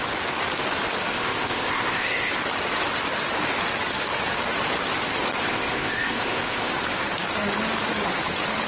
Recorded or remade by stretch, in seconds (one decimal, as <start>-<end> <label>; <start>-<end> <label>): 0.0-1.1 recorded; 1.1-2.3 remade; 2.3-5.4 recorded; 5.4-6.7 remade; 6.7-8.7 recorded